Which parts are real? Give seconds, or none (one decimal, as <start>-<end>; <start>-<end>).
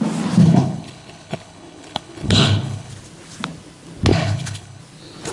0.0-0.4; 2.9-4.1; 4.8-5.3